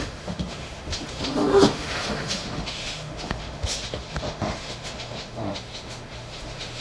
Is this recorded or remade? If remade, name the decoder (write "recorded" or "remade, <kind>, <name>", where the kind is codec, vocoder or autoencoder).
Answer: remade, autoencoder, DAC-VAE